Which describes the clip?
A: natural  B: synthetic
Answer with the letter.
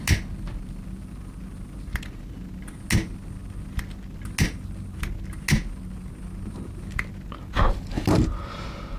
A